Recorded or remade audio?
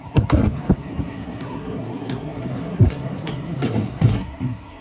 remade